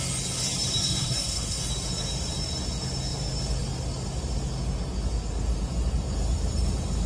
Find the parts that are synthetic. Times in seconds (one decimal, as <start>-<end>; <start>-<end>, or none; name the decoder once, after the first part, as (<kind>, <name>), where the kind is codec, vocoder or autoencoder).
0.8-1.6 (codec, SNAC)